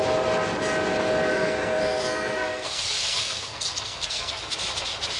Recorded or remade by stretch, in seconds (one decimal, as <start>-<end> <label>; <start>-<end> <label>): 0.0-1.3 recorded; 1.3-4.4 remade; 4.4-5.2 recorded